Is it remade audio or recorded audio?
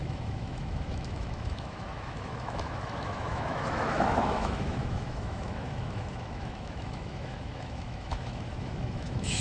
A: remade